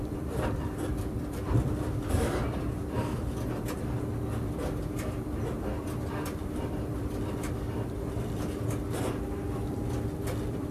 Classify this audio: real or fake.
fake